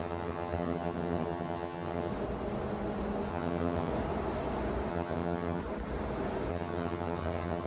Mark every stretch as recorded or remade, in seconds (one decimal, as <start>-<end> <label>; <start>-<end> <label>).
0.0-2.1 remade; 2.1-3.3 recorded; 3.3-3.9 remade; 3.9-4.9 recorded; 4.9-5.6 remade; 5.6-6.5 recorded; 6.5-7.7 remade